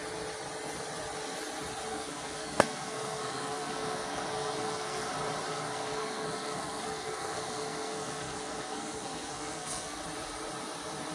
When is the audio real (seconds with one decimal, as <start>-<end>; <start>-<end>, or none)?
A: 0.0-1.9; 5.1-5.5; 10.0-11.1